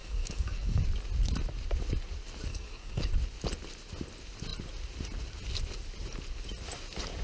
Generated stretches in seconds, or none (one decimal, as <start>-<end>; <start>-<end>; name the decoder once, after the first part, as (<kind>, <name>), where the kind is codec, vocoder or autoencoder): 0.0-0.8 (codec, DAC); 2.5-3.1